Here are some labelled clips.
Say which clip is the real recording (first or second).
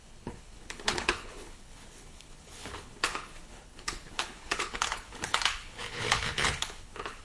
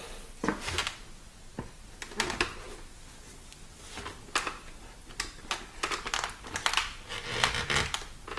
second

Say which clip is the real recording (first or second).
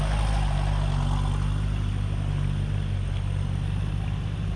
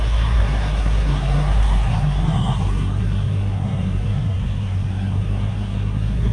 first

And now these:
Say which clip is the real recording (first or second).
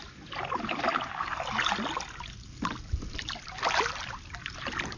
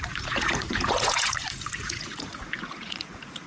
first